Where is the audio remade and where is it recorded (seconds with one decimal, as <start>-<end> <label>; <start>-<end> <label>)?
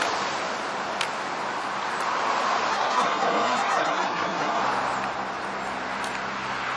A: 0.0-2.7 recorded; 2.7-4.6 remade; 4.6-6.8 recorded